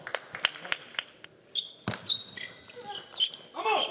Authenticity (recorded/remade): recorded